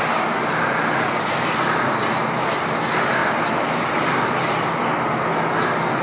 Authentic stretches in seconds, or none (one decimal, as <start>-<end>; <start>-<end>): 0.0-6.0